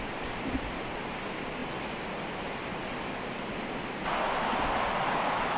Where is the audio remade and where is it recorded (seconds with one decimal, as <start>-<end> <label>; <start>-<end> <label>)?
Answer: 0.0-5.6 recorded